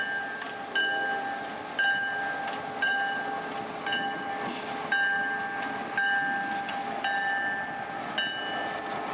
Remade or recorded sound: recorded